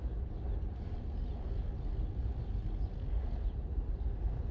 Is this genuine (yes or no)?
yes